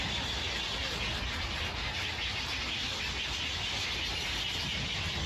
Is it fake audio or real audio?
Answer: real